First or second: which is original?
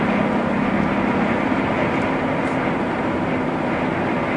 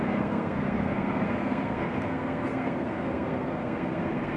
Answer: first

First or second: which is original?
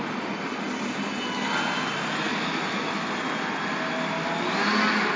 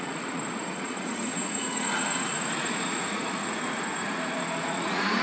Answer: first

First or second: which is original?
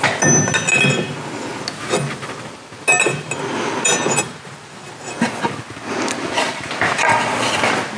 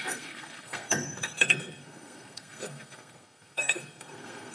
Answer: first